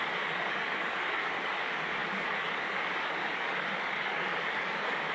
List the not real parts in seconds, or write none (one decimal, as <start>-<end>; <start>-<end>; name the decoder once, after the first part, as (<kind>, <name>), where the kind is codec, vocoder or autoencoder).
0.0-5.1 (codec, DAC)